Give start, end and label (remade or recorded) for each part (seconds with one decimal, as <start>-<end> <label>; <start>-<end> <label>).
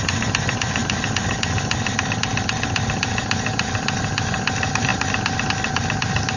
0.0-6.4 recorded